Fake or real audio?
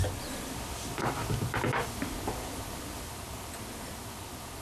real